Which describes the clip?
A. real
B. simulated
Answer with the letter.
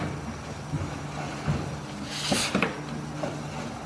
A